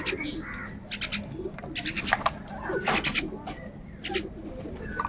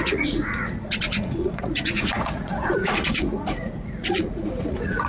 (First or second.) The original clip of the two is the first